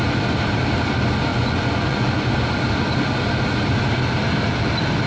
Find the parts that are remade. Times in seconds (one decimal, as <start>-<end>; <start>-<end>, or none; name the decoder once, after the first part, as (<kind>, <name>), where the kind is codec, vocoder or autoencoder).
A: 1.3-2.3 (vocoder, Vocos)